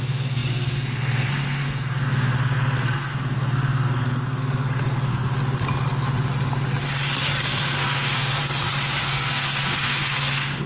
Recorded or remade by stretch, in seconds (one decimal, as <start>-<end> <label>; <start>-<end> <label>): 0.0-5.3 remade; 5.3-7.4 recorded; 7.4-8.4 remade; 8.4-9.0 recorded; 9.0-10.7 remade